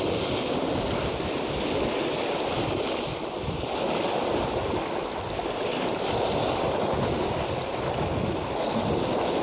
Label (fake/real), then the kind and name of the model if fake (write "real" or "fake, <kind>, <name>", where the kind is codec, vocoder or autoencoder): real